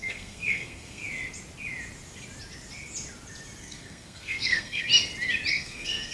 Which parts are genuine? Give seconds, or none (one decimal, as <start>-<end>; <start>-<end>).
1.0-3.6; 4.9-5.5